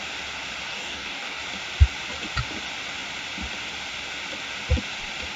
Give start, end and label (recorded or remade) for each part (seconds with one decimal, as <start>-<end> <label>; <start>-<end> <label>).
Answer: 0.0-0.7 recorded; 0.7-1.4 remade; 1.4-5.4 recorded